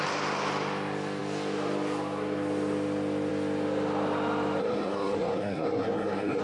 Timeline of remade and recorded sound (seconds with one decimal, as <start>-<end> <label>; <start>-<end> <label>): 0.0-4.6 recorded; 4.6-6.4 remade